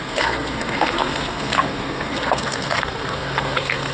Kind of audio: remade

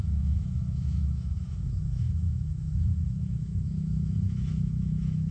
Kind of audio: remade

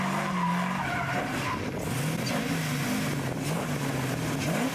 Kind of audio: recorded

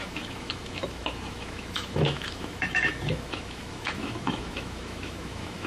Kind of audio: remade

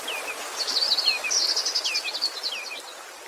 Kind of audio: recorded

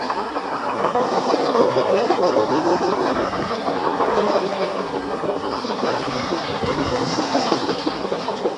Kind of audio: remade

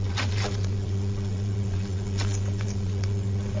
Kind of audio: remade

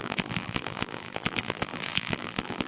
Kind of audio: remade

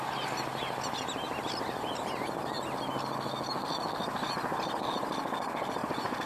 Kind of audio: recorded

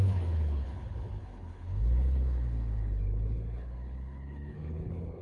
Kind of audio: remade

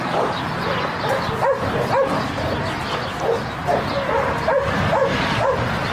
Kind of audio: recorded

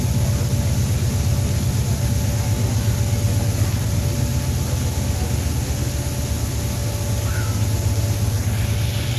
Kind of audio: recorded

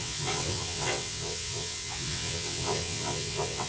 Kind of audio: remade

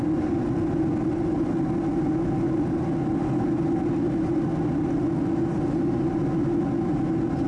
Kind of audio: recorded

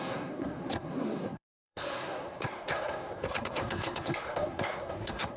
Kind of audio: remade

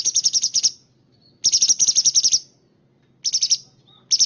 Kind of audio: recorded